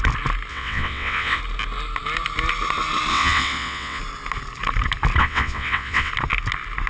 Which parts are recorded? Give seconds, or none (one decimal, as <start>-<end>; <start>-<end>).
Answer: 0.0-0.5; 1.4-3.1; 4.0-5.2; 6.1-6.9